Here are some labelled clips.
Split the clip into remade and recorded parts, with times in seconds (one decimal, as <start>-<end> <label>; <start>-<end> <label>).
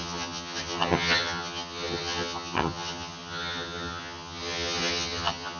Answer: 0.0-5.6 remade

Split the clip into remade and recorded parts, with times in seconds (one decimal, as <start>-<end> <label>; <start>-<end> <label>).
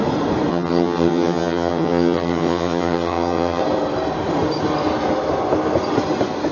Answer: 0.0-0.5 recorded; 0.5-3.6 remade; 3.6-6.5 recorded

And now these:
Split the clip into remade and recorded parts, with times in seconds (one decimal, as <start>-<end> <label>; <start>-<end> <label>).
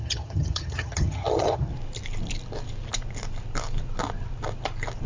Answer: 0.0-1.7 remade; 1.7-5.1 recorded